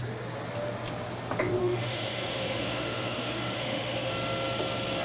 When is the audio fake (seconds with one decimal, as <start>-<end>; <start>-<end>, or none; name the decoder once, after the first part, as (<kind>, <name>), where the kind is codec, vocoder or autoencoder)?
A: 1.6-4.1 (autoencoder, DAC-VAE)